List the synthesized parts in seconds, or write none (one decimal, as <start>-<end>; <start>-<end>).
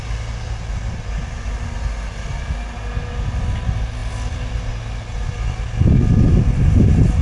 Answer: none